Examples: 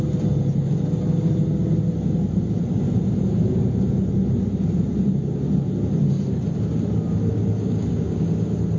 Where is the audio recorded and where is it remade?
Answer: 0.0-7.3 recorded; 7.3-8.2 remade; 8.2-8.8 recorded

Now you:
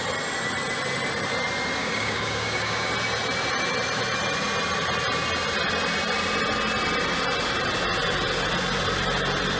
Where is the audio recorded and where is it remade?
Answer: 0.0-1.8 recorded; 1.8-2.9 remade; 2.9-9.6 recorded

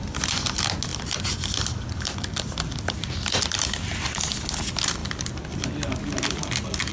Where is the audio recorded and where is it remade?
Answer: 0.0-0.9 recorded; 0.9-4.2 remade; 4.2-5.0 recorded; 5.0-5.9 remade; 5.9-6.9 recorded

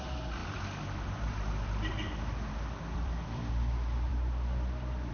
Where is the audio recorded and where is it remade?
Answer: 0.0-0.4 recorded; 0.4-3.5 remade; 3.5-5.1 recorded

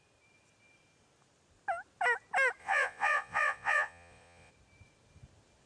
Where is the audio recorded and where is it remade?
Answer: 0.0-2.6 recorded; 2.6-4.5 remade; 4.5-5.7 recorded

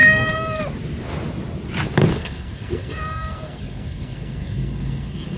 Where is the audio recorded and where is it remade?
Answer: 0.0-0.6 remade; 0.6-2.1 recorded; 2.1-5.4 remade

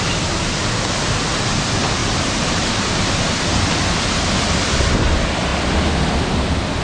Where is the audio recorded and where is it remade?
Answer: 0.0-2.0 recorded; 2.0-3.0 remade; 3.0-6.8 recorded

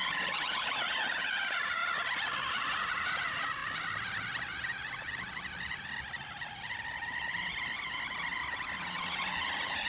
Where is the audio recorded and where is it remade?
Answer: 0.0-1.8 remade; 1.8-2.5 recorded; 2.5-3.6 remade; 3.6-8.8 recorded; 8.8-9.9 remade